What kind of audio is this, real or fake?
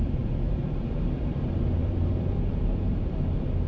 fake